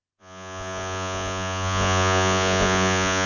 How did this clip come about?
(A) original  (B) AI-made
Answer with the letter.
B